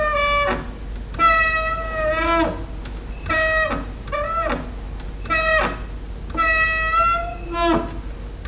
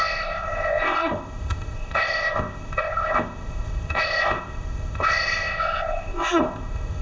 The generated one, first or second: second